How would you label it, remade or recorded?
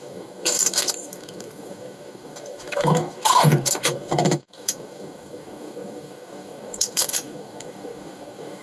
remade